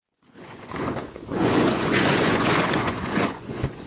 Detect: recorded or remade remade